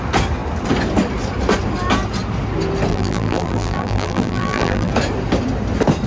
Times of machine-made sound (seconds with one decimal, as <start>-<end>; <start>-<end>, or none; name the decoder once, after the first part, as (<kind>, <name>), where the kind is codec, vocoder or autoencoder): 2.9-4.9 (vocoder, BigVGAN v2)